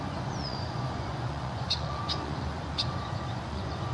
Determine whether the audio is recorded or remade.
remade